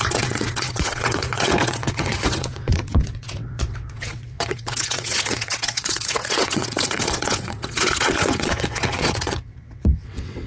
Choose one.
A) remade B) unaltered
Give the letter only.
A